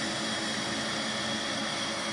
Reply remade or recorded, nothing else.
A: recorded